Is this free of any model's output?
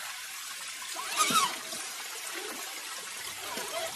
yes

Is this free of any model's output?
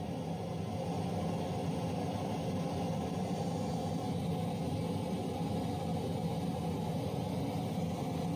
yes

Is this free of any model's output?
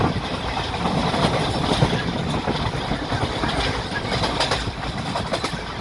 no